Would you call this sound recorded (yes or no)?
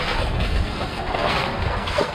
no